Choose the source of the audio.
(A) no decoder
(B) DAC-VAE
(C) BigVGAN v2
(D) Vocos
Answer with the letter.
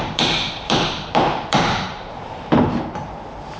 C